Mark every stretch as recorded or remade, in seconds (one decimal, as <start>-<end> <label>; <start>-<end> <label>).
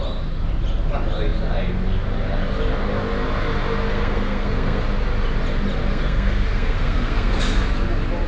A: 0.0-3.9 recorded; 3.9-4.8 remade; 4.8-5.9 recorded; 5.9-7.4 remade; 7.4-8.3 recorded